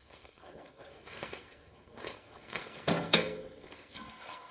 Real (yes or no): no